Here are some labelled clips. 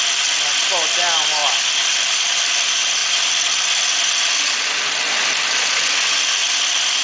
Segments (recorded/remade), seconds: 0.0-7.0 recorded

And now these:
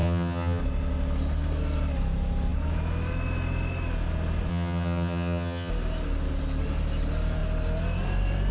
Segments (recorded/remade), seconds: 0.0-0.6 remade; 0.6-4.5 recorded; 4.5-5.7 remade; 5.7-8.5 recorded

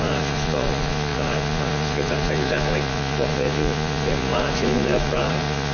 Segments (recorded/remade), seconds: 0.0-5.7 remade

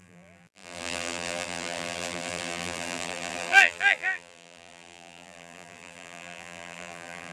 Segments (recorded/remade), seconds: 0.0-7.3 remade

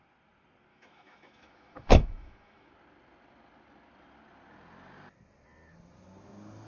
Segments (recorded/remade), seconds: 0.0-0.7 recorded; 0.7-2.7 remade; 2.7-6.7 recorded

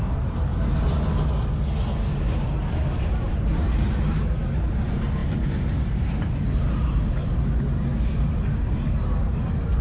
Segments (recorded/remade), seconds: 0.0-0.5 remade; 0.5-2.1 recorded; 2.1-9.8 remade

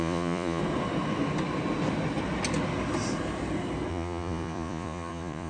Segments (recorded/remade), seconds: 0.0-0.6 remade; 0.6-3.9 recorded; 3.9-5.5 remade